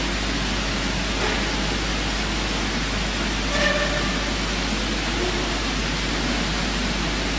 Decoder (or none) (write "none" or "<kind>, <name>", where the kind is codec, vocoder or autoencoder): none